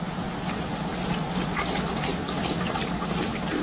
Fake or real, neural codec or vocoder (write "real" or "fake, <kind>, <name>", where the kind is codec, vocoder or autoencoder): real